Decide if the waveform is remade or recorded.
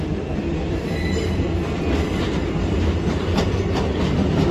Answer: recorded